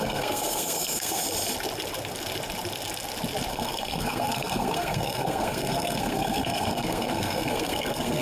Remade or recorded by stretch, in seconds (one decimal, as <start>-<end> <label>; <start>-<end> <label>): 0.0-1.2 remade; 1.2-3.5 recorded; 3.5-8.2 remade

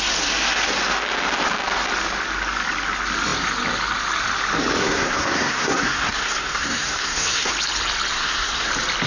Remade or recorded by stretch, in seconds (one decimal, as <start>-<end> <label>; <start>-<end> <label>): 0.0-4.8 recorded; 4.8-7.5 remade; 7.5-8.1 recorded; 8.1-8.7 remade; 8.7-9.1 recorded